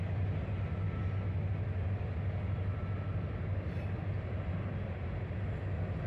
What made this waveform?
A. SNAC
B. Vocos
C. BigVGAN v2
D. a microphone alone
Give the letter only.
D